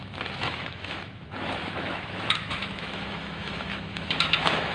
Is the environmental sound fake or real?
fake